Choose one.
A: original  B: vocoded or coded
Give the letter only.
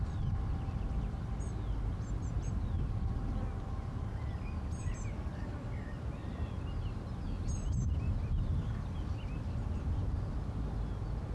A